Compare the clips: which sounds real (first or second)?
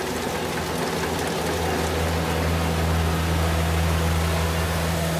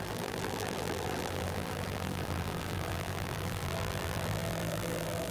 first